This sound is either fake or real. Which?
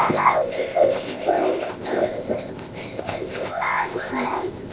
fake